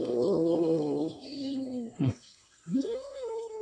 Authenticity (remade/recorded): remade